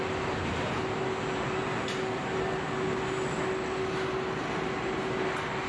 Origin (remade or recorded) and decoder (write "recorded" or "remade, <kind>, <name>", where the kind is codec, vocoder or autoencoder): recorded